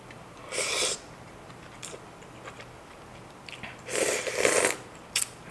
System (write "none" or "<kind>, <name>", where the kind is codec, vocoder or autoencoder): vocoder, BigVGAN v2